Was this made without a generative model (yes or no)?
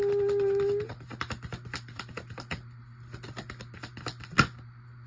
yes